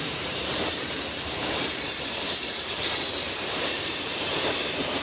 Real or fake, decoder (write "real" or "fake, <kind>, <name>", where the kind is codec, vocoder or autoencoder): fake, vocoder, BigVGAN v2